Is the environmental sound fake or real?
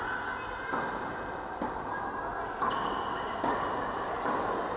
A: real